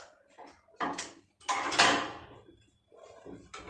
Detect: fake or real real